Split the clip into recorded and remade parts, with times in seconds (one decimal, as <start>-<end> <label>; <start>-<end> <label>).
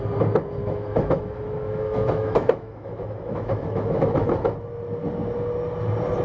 0.0-0.6 recorded; 0.6-4.3 remade; 4.3-6.2 recorded